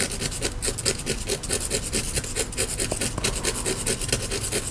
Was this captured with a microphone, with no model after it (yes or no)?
yes